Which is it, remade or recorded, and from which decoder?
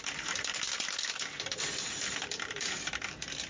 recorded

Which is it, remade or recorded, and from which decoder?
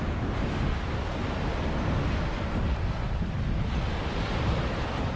recorded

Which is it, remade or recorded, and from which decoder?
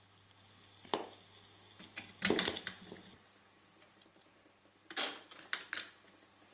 recorded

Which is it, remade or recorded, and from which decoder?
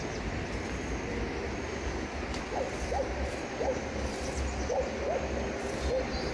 recorded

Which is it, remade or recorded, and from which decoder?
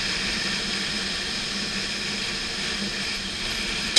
recorded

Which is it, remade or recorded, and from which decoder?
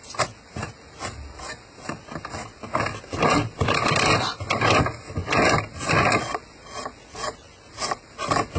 recorded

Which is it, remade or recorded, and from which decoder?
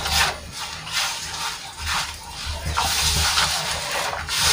recorded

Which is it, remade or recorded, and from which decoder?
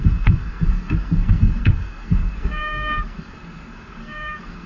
remade, codec, SNAC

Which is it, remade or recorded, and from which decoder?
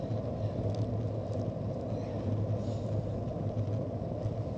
recorded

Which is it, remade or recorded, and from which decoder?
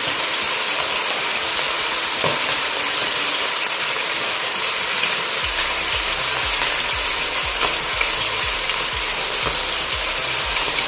remade, vocoder, BigVGAN v2